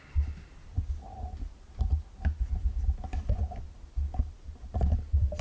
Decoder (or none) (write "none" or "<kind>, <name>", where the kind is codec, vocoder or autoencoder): none